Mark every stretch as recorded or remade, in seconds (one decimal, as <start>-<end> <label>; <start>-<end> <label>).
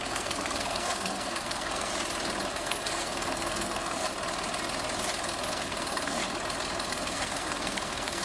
0.0-1.9 remade; 1.9-2.5 recorded; 2.5-4.1 remade; 4.1-5.5 recorded; 5.5-6.2 remade; 6.2-6.9 recorded; 6.9-8.2 remade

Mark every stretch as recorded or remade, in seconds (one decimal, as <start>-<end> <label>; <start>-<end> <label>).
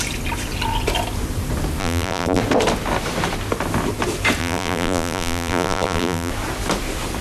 0.0-1.8 recorded; 1.8-2.4 remade; 2.4-4.4 recorded; 4.4-6.3 remade; 6.3-7.2 recorded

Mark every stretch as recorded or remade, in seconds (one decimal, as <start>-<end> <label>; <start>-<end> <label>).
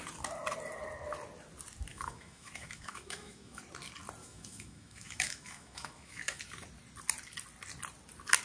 0.0-1.9 recorded; 1.9-3.6 remade; 3.6-4.2 recorded; 4.2-6.4 remade; 6.4-8.4 recorded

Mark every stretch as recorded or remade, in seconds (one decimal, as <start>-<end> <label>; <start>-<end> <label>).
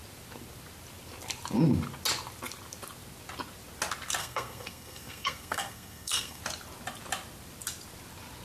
0.0-4.2 recorded; 4.2-6.4 remade; 6.4-8.4 recorded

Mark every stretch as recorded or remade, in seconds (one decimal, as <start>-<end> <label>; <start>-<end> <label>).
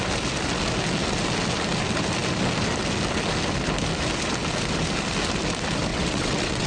0.0-5.9 recorded; 5.9-6.7 remade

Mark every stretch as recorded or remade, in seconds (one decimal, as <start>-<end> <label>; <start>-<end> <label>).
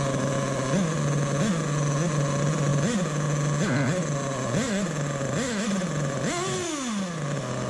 0.0-7.7 recorded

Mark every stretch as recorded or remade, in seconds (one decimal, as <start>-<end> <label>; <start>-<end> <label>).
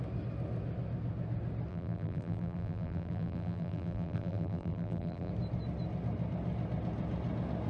0.0-1.7 recorded; 1.7-5.3 remade; 5.3-7.7 recorded